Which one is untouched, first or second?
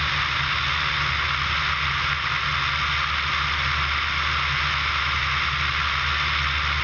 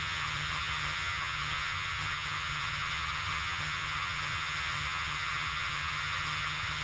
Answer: first